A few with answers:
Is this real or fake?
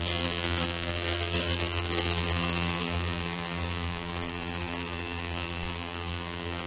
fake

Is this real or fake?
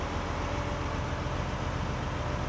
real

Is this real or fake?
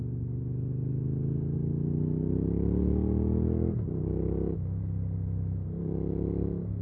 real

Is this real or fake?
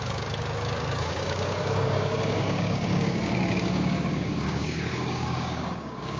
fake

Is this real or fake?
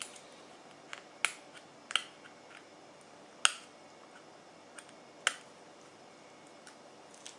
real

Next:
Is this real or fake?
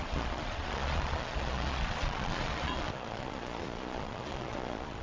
fake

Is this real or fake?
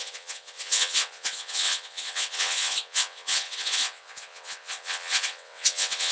fake